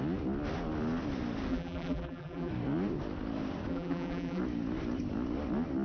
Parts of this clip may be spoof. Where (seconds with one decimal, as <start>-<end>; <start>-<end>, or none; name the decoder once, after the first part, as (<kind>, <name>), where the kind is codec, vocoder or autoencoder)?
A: 1.5-2.5 (vocoder, BigVGAN v2); 3.7-4.4